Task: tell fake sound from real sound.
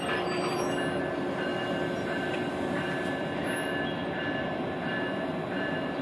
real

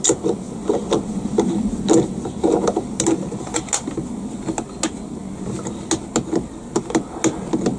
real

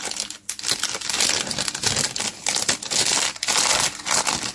real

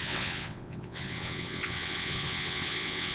fake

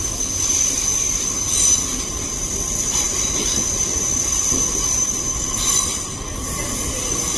real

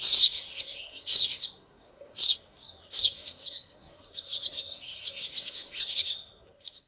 fake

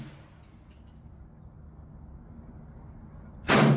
real